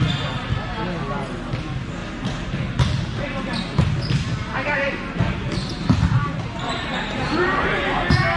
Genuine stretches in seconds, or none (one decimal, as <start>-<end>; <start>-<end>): 0.0-2.0; 3.5-4.4; 7.8-8.4

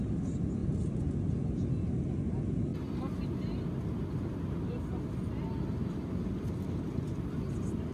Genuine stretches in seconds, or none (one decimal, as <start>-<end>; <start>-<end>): 0.0-7.9